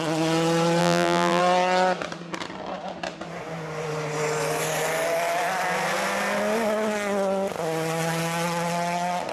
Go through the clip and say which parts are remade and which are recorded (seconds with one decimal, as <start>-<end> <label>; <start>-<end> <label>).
0.0-0.8 recorded; 0.8-1.4 remade; 1.4-9.3 recorded